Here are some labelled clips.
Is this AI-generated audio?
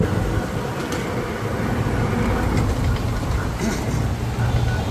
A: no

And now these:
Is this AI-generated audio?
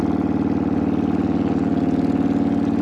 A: no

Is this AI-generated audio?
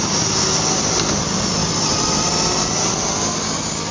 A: no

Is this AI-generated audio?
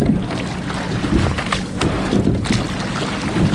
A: no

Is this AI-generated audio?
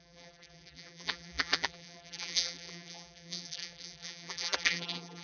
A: yes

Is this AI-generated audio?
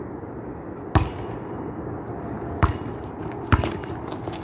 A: no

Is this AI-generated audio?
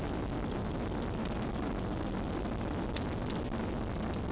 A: no